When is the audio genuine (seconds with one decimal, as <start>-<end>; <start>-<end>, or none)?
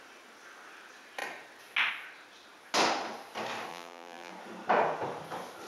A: 0.0-3.7; 4.3-5.7